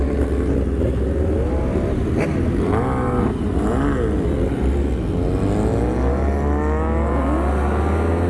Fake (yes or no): no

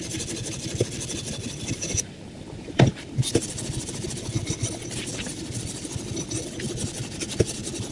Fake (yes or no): yes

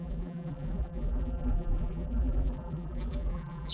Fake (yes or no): yes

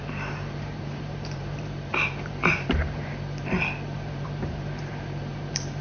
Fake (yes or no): yes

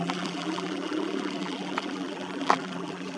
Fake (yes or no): yes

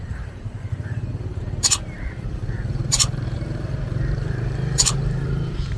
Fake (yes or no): yes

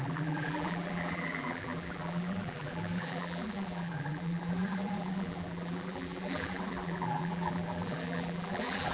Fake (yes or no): yes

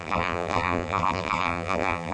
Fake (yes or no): yes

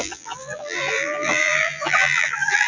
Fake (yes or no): yes